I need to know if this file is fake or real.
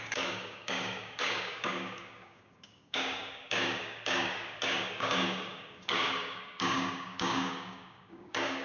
fake